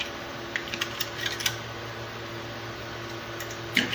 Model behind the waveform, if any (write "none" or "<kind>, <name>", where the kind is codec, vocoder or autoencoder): none